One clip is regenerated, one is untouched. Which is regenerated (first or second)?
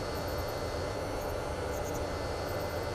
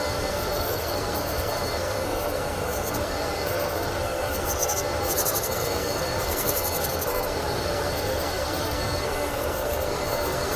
second